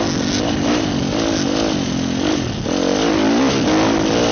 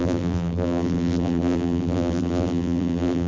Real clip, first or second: first